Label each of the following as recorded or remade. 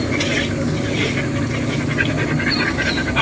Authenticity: recorded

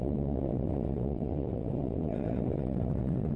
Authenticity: remade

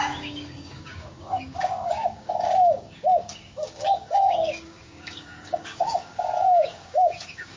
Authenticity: remade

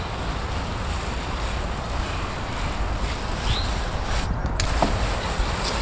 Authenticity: recorded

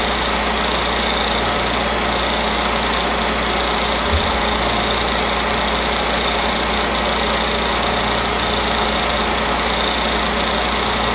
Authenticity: recorded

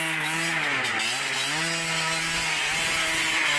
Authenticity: recorded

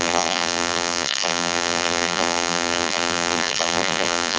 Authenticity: remade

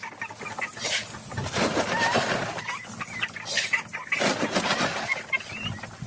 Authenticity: recorded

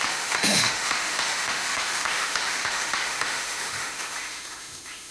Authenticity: remade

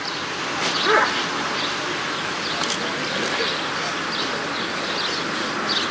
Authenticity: recorded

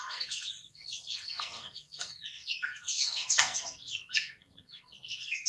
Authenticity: remade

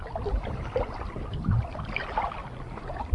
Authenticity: recorded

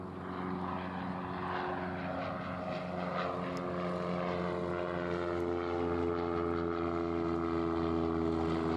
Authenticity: recorded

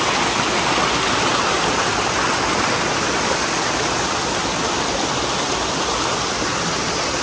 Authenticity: recorded